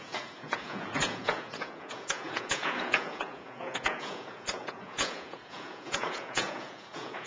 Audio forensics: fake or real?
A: fake